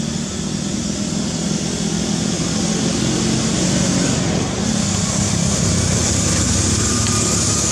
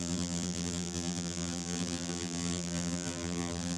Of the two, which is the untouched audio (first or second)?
first